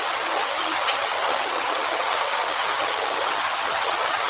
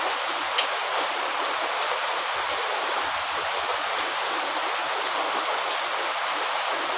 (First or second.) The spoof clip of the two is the first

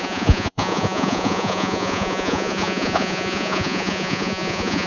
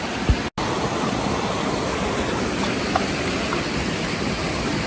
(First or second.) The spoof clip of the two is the first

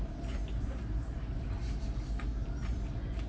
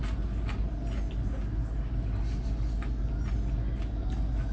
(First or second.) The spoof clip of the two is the first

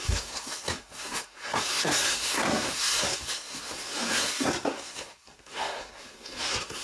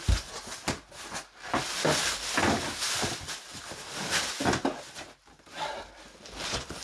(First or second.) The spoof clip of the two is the first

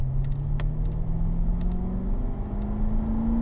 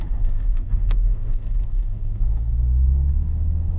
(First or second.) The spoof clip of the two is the second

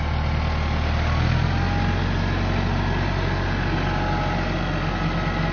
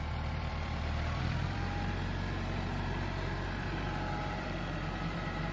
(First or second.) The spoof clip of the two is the second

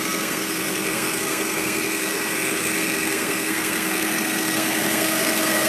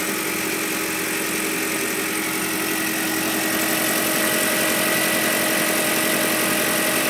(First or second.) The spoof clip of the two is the first